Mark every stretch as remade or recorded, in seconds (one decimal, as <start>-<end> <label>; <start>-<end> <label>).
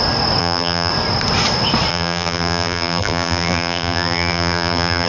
0.0-0.4 recorded; 0.4-0.9 remade; 0.9-1.9 recorded; 1.9-5.1 remade